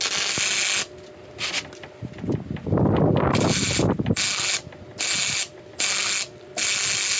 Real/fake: real